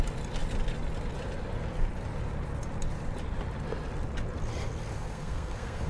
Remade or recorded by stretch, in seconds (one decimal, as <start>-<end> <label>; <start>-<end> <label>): 0.0-4.9 recorded; 4.9-5.9 remade